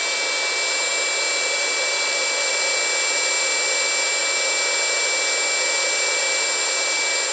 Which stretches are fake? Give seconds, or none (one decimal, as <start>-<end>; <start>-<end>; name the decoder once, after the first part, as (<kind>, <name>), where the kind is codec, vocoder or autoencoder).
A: none